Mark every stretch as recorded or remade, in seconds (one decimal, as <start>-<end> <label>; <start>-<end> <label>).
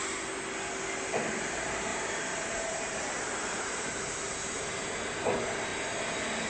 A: 0.0-1.9 recorded; 1.9-4.0 remade; 4.0-6.5 recorded